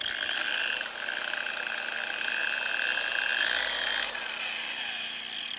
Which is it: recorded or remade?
recorded